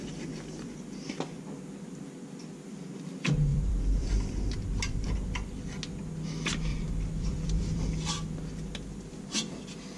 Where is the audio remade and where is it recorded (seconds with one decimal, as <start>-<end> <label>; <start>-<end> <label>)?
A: 0.0-3.5 recorded; 3.5-4.1 remade; 4.1-6.7 recorded; 6.7-8.1 remade; 8.1-10.0 recorded